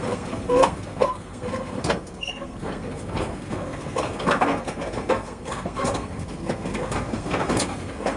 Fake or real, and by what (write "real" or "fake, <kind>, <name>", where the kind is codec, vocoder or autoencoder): fake, codec, SNAC